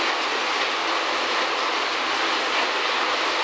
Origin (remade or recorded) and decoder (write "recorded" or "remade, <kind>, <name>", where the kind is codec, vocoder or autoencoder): recorded